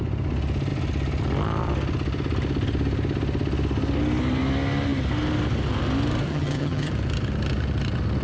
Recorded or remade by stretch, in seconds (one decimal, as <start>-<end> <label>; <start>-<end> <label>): 0.0-6.3 recorded; 6.3-6.9 remade; 6.9-8.2 recorded